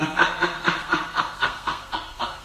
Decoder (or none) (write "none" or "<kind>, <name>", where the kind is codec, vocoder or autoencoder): codec, SNAC